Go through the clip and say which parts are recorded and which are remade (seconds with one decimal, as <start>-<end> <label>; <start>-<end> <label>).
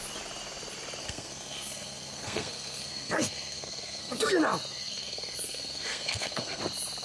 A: 0.0-1.0 recorded; 1.0-4.3 remade; 4.3-4.7 recorded; 4.7-6.6 remade; 6.6-7.0 recorded